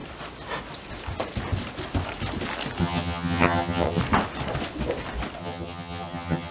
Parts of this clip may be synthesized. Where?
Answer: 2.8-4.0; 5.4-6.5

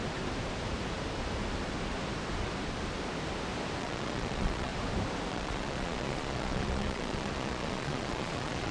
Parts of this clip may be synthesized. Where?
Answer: 3.8-4.7; 5.3-8.7

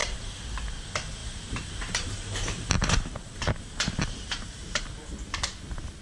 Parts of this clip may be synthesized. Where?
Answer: 0.0-0.6; 1.2-4.8

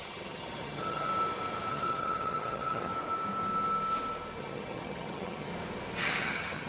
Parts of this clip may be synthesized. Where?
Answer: 0.0-1.1; 1.7-2.9; 4.4-5.5; 6.0-6.7

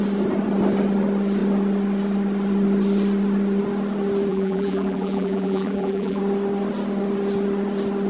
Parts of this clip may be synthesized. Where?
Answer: 4.3-6.2